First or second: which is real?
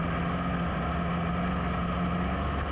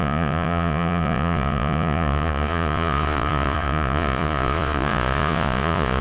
first